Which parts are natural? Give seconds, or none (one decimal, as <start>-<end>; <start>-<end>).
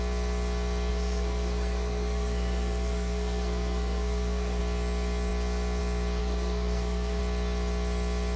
0.0-0.9; 4.6-6.2; 7.2-8.4